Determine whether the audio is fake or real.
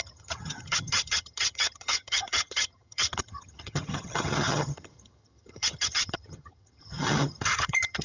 fake